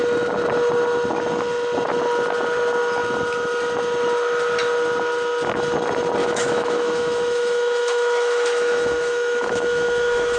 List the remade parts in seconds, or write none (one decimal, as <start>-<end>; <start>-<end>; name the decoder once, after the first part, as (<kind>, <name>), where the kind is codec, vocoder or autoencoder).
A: 6.2-10.4 (autoencoder, DAC-VAE)